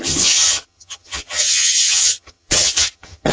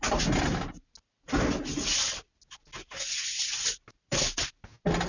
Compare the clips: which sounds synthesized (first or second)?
first